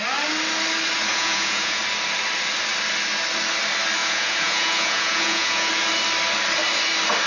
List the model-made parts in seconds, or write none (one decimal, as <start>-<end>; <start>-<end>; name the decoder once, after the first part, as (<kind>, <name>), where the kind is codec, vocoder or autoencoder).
1.1-1.8 (vocoder, Vocos); 4.0-5.7